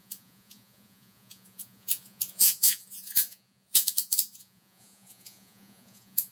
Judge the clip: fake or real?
fake